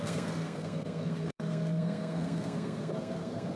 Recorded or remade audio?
remade